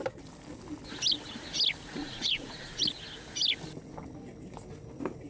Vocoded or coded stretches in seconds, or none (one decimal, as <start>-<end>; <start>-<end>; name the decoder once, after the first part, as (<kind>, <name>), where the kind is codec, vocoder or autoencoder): 2.0-2.8 (vocoder, Vocos)